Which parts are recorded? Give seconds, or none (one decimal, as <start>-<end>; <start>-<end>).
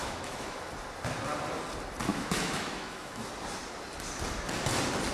0.6-2.1; 3.3-5.1